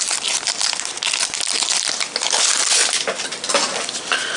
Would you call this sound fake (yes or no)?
no